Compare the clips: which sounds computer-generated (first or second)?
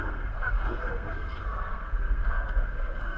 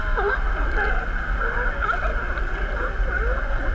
first